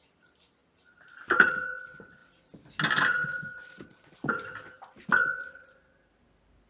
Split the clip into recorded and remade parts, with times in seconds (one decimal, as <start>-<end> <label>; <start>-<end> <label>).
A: 0.0-6.7 recorded